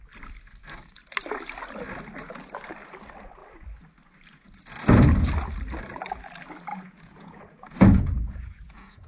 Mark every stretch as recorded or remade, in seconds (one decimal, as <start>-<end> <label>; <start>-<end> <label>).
0.0-6.7 recorded; 6.7-9.1 remade